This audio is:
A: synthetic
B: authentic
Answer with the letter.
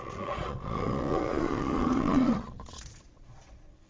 A